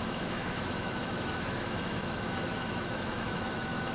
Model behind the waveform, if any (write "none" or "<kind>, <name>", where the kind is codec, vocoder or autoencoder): autoencoder, DAC-VAE